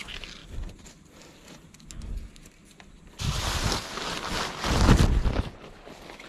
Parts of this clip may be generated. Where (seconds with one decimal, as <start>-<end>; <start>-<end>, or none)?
none